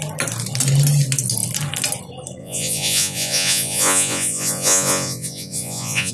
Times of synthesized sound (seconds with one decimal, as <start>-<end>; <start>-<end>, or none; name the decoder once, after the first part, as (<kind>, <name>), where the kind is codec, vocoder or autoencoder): 2.4-6.1 (vocoder, Vocos)